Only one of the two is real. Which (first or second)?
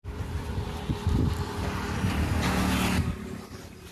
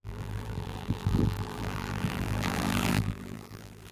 first